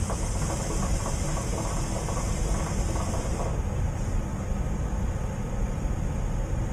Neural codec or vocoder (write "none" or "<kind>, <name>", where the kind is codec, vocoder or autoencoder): none